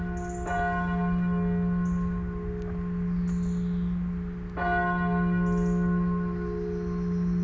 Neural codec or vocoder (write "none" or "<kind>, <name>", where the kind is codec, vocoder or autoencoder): none